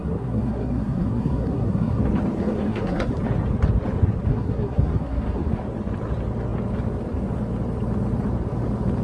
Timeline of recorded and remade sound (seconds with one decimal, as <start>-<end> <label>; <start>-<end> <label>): 0.0-2.0 remade; 2.0-2.4 recorded; 2.4-3.1 remade; 3.1-4.3 recorded; 4.3-5.5 remade; 5.5-9.0 recorded

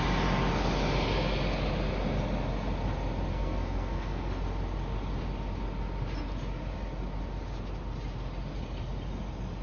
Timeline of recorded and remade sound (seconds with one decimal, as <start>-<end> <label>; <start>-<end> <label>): 0.0-3.3 recorded; 3.3-4.3 remade; 4.3-9.6 recorded